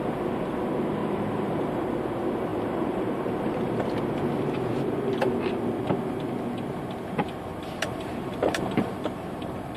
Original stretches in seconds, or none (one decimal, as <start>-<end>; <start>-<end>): 0.0-1.0; 1.9-2.5; 3.7-7.5